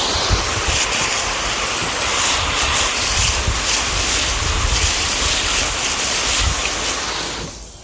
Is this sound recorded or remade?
recorded